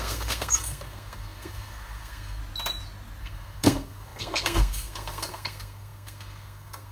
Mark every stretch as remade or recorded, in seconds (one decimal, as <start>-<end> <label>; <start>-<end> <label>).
0.0-2.4 remade; 2.4-3.2 recorded; 3.2-6.9 remade